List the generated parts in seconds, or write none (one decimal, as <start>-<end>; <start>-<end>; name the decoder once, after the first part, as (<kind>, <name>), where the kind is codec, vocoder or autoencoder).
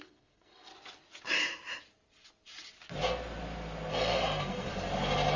0.0-0.7 (codec, SNAC); 3.9-4.7